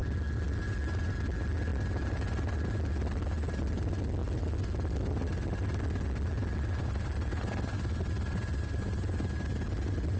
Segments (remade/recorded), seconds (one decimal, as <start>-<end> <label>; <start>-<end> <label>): 0.0-10.2 recorded